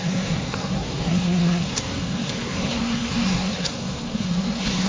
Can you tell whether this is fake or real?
fake